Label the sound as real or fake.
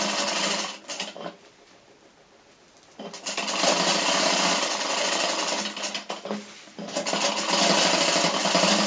real